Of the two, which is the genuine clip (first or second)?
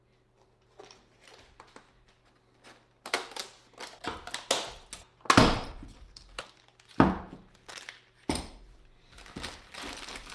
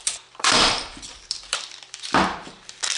first